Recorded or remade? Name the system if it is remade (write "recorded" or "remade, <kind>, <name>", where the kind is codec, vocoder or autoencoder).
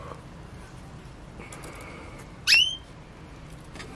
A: recorded